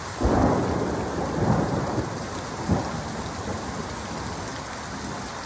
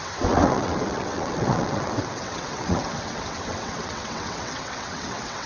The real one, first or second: first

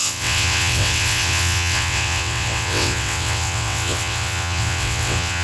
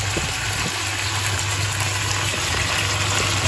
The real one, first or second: second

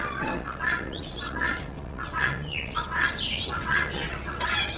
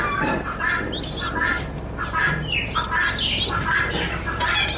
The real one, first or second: second